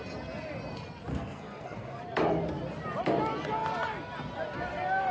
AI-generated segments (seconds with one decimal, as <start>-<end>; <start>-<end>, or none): 1.1-2.0